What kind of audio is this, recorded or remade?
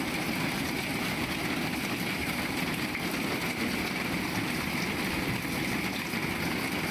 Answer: recorded